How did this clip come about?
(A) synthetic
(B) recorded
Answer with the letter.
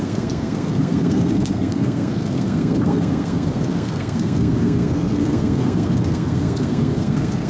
A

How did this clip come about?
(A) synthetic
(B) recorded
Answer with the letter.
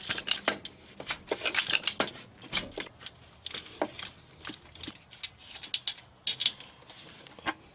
B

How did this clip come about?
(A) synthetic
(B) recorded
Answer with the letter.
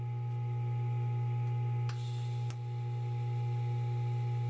B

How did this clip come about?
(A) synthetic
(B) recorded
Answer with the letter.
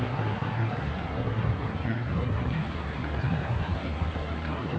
A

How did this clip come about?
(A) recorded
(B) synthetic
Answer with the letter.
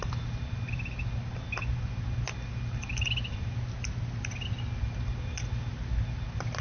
A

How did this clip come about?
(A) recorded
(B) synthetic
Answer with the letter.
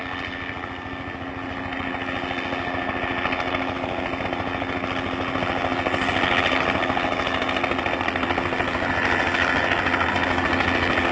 A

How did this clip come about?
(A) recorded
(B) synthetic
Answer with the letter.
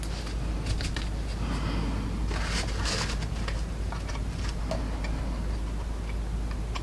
A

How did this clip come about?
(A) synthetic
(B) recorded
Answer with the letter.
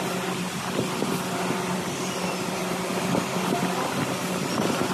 B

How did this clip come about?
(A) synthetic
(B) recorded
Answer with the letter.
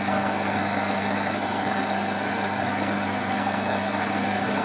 A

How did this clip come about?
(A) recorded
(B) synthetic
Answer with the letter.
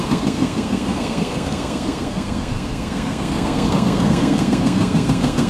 B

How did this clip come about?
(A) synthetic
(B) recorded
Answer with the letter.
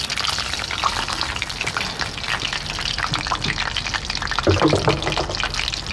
B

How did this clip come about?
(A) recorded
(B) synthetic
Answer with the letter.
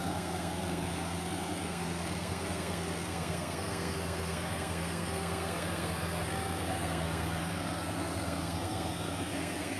B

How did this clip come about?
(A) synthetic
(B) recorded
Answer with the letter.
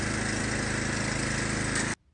B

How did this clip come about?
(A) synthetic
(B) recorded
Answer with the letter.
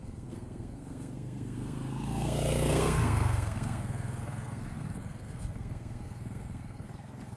A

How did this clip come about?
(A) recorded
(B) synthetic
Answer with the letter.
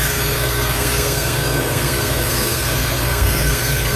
B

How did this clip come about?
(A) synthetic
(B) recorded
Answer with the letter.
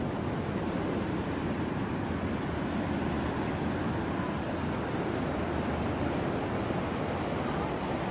B